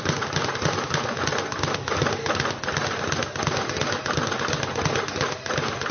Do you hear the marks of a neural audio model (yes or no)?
no